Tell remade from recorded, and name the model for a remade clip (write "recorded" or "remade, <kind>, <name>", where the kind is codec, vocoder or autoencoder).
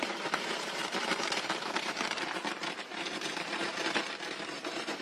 remade, vocoder, BigVGAN v2